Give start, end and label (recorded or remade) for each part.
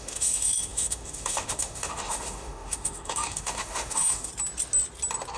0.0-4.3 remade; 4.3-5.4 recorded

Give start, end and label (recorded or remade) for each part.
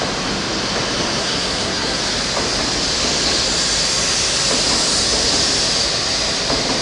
0.0-1.2 recorded; 1.2-2.0 remade; 2.0-6.8 recorded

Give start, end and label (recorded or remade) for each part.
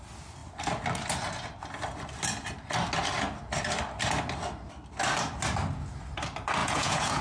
0.0-6.6 recorded; 6.6-7.2 remade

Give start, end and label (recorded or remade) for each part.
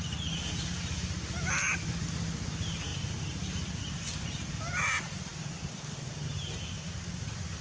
0.0-7.6 recorded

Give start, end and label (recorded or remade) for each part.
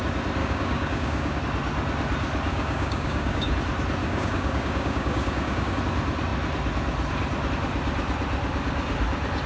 0.0-0.4 recorded; 0.4-1.4 remade; 1.4-2.5 recorded; 2.5-3.5 remade; 3.5-4.0 recorded; 4.0-5.8 remade; 5.8-9.5 recorded